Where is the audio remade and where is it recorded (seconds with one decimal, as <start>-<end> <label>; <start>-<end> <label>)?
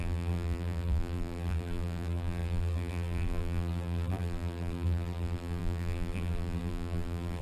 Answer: 0.0-7.4 remade